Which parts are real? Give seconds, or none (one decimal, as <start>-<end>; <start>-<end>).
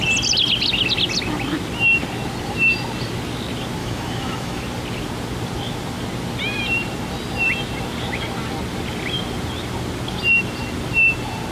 0.0-3.8; 4.6-11.5